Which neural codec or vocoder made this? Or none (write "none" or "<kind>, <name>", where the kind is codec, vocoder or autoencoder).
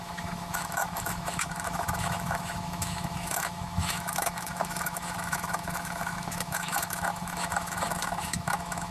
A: autoencoder, DAC-VAE